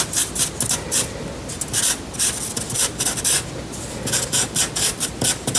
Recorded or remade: recorded